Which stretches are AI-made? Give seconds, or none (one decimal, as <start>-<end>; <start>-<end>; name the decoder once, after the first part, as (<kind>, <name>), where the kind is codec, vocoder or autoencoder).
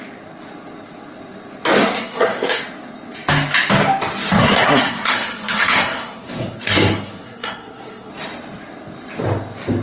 1.8-2.6 (codec, SNAC); 4.4-8.1